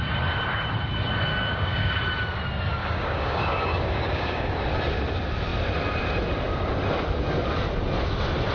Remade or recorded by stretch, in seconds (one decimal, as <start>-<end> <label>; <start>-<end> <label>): 0.0-1.3 recorded; 1.3-1.9 remade; 1.9-2.8 recorded; 2.8-4.5 remade; 4.5-8.5 recorded